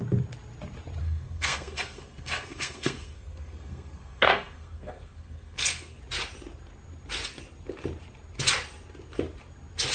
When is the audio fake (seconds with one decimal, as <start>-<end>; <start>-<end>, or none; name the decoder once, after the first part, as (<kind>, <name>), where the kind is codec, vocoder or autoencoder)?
1.0-6.0 (codec, SNAC)